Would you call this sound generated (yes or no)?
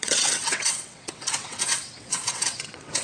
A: yes